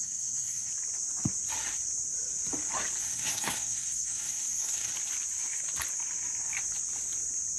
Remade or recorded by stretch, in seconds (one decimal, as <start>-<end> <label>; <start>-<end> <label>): 0.0-0.7 remade; 0.7-3.0 recorded; 3.0-4.9 remade; 4.9-7.6 recorded